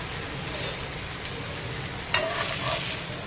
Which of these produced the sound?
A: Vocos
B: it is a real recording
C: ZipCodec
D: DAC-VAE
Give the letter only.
B